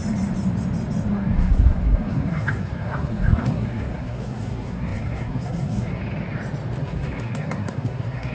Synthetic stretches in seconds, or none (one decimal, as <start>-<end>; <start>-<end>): 1.1-6.0; 6.8-8.3